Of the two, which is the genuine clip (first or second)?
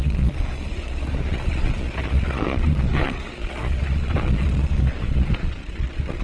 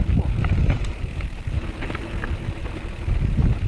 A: second